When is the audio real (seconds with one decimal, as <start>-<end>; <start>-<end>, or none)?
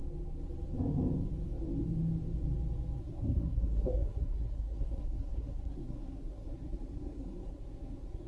0.0-3.0